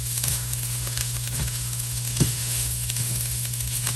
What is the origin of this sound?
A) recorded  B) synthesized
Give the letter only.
B